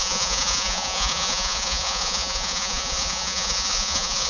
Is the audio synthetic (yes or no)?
yes